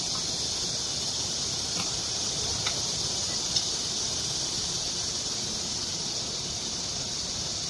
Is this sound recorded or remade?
recorded